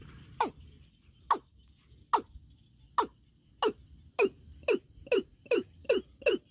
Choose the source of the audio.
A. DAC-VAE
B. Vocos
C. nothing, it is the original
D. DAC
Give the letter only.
C